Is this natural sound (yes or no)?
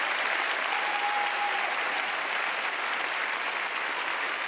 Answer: yes